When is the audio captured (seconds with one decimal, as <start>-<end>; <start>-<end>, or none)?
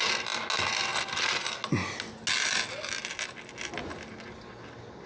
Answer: 0.0-5.1